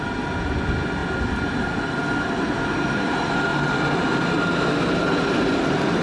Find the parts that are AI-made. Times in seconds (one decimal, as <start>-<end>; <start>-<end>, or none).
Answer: none